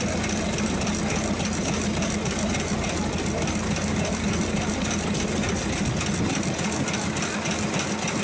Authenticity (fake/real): real